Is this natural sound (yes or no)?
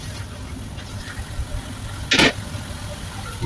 yes